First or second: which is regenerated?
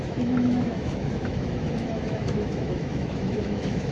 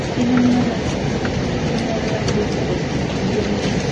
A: first